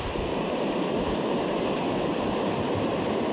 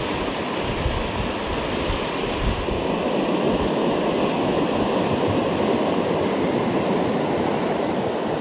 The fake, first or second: first